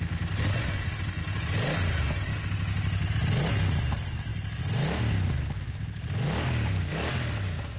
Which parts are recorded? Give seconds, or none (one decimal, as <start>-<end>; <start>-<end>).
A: 0.0-7.8